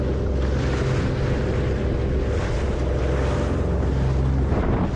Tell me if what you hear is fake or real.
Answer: real